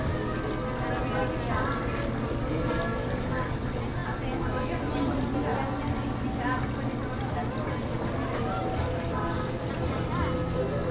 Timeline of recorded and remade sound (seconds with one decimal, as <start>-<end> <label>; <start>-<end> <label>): 0.0-10.9 recorded